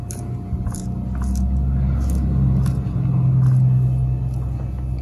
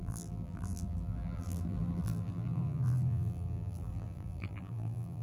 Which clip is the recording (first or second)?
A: first